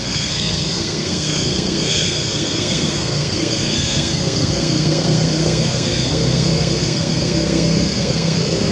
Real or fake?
fake